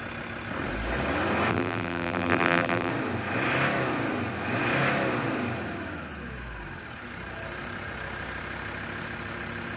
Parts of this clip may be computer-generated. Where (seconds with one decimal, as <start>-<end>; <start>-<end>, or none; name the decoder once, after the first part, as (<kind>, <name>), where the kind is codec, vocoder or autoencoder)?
1.5-2.9 (vocoder, BigVGAN v2)